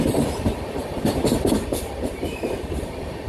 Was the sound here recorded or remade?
remade